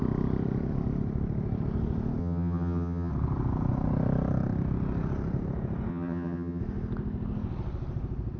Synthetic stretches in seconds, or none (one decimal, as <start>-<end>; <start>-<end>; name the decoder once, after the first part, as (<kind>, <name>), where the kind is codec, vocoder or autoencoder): 2.2-3.1 (vocoder, HiFi-GAN); 5.9-6.6